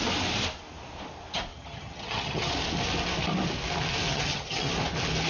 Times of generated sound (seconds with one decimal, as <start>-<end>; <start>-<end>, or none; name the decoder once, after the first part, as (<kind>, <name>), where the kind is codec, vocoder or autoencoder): 1.5-2.5 (vocoder, HiFi-GAN); 4.1-4.7